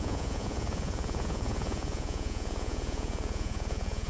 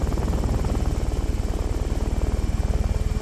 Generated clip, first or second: first